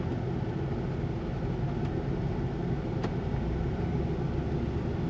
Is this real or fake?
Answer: real